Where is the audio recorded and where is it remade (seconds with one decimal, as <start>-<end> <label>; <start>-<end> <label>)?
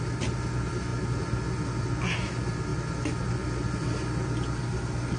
0.0-5.2 recorded